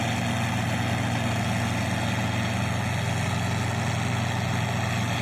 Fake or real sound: real